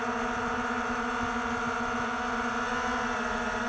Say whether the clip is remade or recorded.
recorded